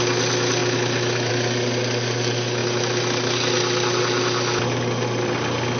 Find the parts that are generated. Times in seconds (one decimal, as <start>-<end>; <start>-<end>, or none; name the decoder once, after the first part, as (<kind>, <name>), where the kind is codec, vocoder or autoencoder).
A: none